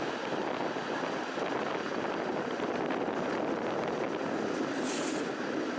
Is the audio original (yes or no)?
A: yes